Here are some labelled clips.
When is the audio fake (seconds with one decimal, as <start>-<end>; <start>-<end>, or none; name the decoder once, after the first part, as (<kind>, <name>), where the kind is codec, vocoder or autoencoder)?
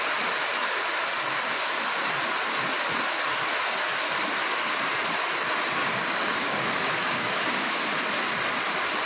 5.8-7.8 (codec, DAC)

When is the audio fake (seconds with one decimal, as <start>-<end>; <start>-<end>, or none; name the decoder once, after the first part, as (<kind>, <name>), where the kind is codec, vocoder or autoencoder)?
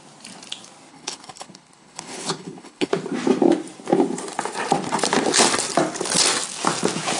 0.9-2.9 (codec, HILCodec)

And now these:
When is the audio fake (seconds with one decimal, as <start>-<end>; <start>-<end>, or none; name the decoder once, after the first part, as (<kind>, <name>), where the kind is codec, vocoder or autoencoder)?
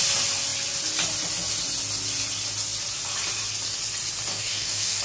4.3-5.0 (codec, DAC)